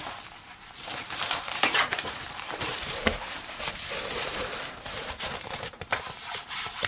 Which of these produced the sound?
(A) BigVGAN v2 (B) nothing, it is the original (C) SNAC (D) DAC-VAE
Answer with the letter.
A